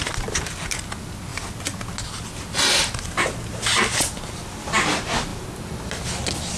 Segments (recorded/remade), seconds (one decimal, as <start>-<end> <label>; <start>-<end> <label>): 0.0-6.6 recorded